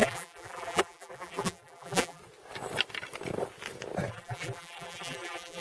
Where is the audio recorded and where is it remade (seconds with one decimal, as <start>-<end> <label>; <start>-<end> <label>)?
0.0-2.2 remade; 2.2-4.1 recorded; 4.1-5.6 remade